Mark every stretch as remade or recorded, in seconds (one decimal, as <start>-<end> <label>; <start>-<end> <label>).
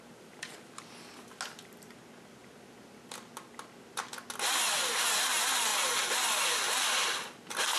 0.0-7.8 recorded